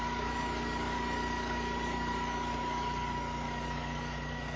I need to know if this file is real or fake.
fake